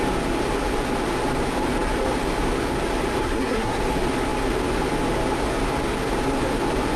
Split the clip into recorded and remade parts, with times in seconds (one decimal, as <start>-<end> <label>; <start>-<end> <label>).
0.0-3.2 recorded; 3.2-3.8 remade; 3.8-7.0 recorded